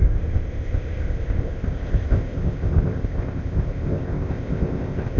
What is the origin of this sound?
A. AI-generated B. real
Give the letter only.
A